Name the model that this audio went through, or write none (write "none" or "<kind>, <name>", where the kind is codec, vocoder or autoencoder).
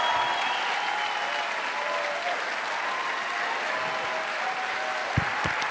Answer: none